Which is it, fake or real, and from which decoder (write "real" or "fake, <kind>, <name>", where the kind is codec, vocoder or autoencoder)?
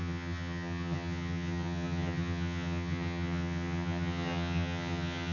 fake, vocoder, HiFi-GAN